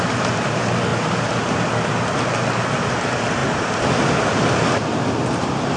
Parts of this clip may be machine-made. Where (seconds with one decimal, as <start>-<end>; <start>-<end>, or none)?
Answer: none